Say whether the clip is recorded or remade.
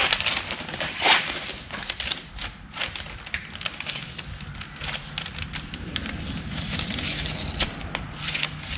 recorded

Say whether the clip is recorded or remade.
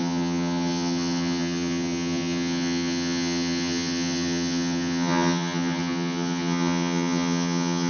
remade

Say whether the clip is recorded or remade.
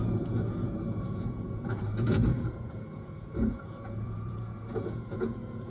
remade